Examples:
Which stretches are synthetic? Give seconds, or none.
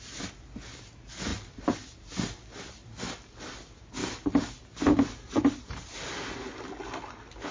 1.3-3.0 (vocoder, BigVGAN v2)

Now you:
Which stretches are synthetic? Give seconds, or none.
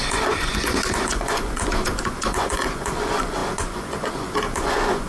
0.0-5.1 (vocoder, Vocos)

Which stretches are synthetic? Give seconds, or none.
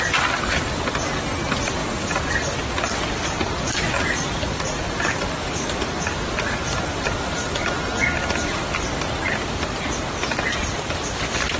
none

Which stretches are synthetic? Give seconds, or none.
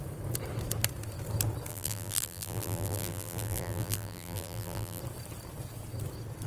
1.7-5.0 (vocoder, BigVGAN v2)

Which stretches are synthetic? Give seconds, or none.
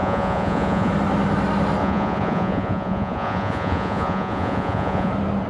0.0-0.9 (vocoder, Vocos); 1.8-5.1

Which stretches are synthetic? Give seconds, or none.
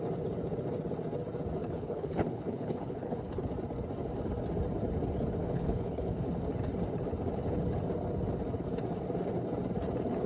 1.6-3.4 (codec, HILCodec); 5.4-6.4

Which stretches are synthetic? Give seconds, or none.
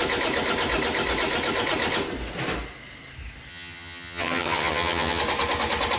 3.5-5.2 (vocoder, HiFi-GAN)